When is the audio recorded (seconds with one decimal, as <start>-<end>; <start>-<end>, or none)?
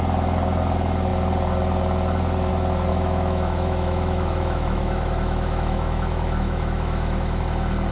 0.0-2.9; 7.4-7.9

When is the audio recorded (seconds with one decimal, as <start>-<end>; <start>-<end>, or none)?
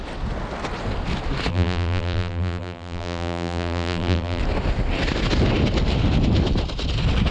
0.0-1.5; 4.4-7.3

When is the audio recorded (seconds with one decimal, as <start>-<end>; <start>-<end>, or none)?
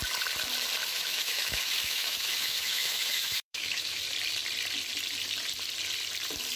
0.0-0.9; 4.0-6.6